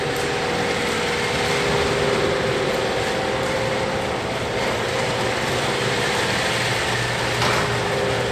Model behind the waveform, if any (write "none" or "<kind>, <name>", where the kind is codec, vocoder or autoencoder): none